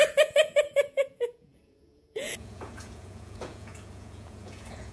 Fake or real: fake